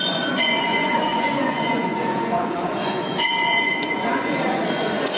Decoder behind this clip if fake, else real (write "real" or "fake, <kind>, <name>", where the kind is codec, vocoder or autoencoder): fake, vocoder, Vocos